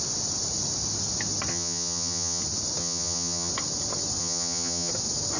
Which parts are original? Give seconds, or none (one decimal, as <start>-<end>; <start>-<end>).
0.0-1.5; 2.4-2.8; 3.5-4.2; 4.9-5.4